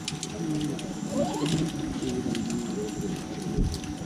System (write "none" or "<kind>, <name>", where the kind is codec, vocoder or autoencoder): none